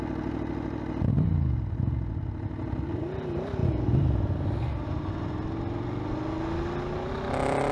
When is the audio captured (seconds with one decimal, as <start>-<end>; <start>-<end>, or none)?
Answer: 0.0-7.7